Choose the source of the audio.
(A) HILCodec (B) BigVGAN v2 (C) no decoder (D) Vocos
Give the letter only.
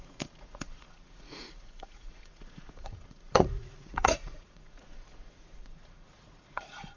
D